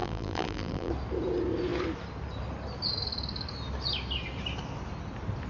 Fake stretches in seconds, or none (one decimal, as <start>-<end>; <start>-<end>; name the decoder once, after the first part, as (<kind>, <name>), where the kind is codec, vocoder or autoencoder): 0.0-0.9 (vocoder, BigVGAN v2)